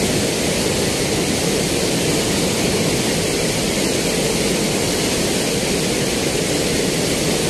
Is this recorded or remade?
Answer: recorded